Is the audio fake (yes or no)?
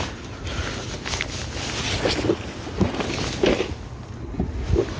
no